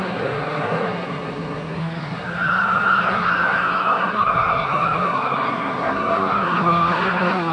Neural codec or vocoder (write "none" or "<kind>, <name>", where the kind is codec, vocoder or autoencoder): codec, SNAC